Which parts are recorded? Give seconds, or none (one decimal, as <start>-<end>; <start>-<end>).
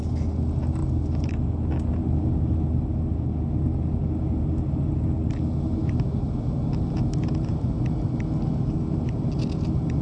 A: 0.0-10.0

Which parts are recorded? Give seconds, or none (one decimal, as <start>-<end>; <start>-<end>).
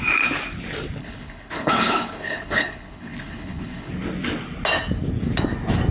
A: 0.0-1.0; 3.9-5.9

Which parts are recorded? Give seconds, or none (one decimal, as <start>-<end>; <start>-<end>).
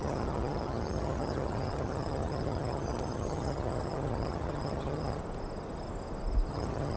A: 5.2-6.5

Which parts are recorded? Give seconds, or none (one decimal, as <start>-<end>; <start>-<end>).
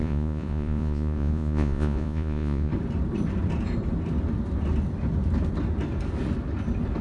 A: 2.7-7.0